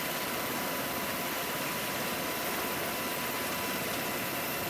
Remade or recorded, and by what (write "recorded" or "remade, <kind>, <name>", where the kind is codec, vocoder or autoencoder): recorded